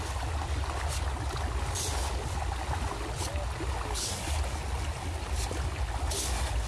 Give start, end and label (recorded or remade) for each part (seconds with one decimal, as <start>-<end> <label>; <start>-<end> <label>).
0.0-6.7 recorded